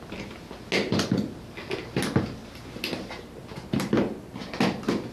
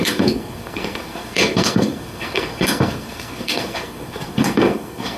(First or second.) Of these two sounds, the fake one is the second